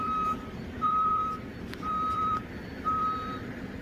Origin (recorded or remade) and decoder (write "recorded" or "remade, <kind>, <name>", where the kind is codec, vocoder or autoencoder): remade, vocoder, BigVGAN v2